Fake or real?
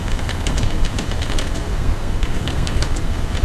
fake